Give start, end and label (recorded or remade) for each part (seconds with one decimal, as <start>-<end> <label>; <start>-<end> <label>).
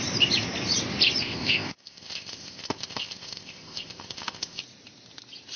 0.0-1.2 recorded; 1.2-4.6 remade; 4.6-5.6 recorded